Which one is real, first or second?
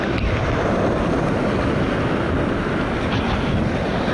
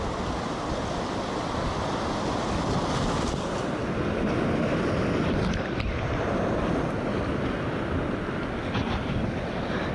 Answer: first